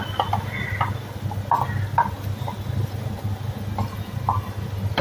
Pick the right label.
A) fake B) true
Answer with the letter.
B